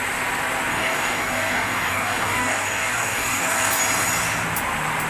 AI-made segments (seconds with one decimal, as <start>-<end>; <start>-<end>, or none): 0.7-3.8

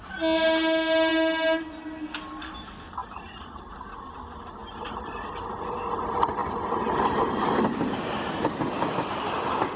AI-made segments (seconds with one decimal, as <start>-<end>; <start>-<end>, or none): 6.4-7.4

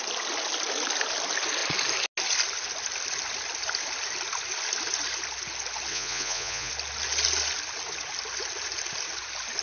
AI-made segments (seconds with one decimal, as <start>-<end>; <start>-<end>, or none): 5.9-6.7